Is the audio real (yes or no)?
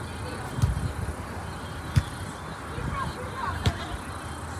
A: yes